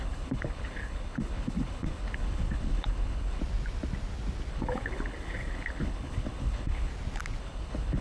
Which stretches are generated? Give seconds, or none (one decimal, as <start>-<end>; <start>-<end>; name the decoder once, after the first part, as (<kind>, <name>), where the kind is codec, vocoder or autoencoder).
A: 0.0-3.4 (codec, HILCodec); 4.5-6.9; 7.4-8.0

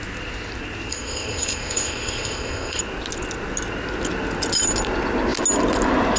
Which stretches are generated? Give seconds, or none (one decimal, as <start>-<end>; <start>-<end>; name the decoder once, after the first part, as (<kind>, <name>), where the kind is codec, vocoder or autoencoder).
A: 0.9-2.8 (codec, ZipCodec)

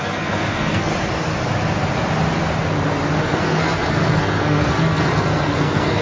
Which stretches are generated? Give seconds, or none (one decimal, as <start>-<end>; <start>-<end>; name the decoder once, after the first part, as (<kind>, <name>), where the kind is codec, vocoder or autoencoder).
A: 0.0-0.9 (codec, SNAC); 3.2-6.0

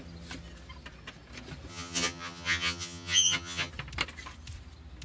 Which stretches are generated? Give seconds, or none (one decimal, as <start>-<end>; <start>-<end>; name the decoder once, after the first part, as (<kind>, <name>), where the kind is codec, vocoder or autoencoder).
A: 1.7-3.7 (vocoder, HiFi-GAN)

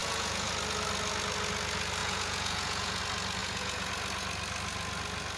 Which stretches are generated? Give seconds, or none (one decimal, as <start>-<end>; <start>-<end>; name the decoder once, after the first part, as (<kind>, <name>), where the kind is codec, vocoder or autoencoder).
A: 0.0-0.5 (vocoder, Vocos); 2.0-3.0; 3.4-3.9

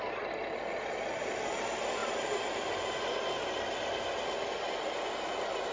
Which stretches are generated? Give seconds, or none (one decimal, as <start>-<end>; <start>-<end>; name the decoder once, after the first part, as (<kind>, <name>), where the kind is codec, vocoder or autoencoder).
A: none

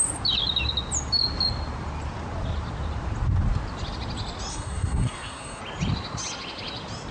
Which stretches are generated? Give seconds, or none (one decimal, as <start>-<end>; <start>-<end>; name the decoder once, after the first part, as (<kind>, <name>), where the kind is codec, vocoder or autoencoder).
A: 4.5-5.6 (codec, SNAC)

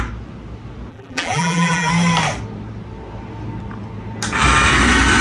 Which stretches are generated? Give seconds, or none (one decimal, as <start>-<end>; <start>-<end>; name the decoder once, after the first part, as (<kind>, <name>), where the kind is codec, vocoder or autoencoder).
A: 0.9-1.9 (vocoder, BigVGAN v2)